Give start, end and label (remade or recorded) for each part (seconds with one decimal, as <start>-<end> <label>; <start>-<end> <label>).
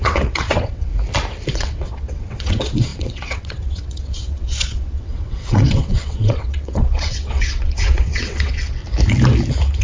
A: 0.0-0.9 remade; 0.9-1.5 recorded; 1.5-8.8 remade; 8.8-9.8 recorded